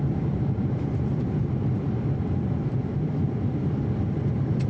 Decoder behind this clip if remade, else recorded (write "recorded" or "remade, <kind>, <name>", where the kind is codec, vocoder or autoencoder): remade, vocoder, BigVGAN v2